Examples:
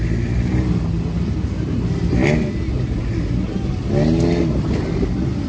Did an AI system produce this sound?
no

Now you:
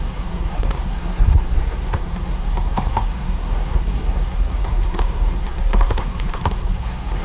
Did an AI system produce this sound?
yes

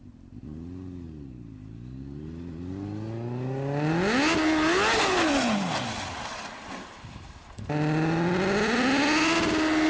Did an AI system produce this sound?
no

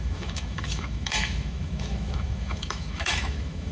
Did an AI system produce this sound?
yes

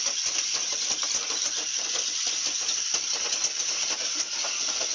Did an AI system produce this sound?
no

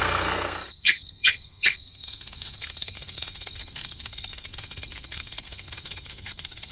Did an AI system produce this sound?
yes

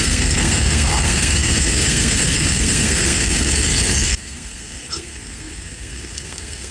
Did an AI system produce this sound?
yes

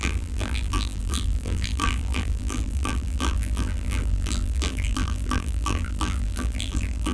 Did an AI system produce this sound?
yes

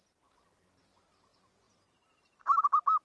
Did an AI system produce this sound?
yes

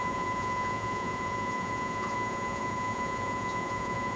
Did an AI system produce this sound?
yes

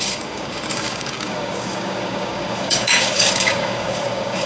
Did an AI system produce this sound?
yes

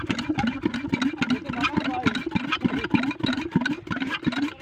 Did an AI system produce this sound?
no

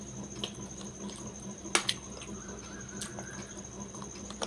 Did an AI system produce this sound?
no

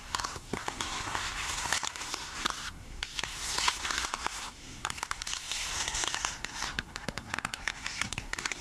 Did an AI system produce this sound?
yes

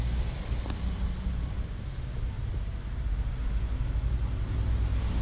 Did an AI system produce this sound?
no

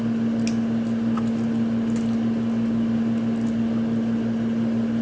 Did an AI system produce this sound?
no